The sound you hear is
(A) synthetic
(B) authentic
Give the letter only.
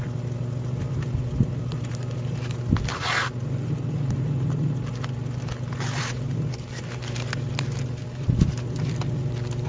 B